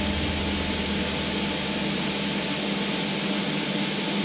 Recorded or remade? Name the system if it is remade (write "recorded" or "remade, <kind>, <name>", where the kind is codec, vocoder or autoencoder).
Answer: recorded